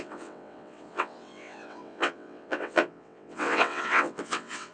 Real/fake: fake